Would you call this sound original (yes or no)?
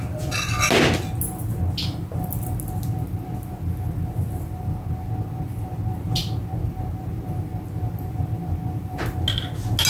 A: yes